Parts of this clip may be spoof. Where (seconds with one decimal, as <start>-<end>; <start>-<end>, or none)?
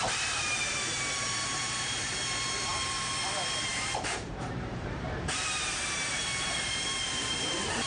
0.0-7.9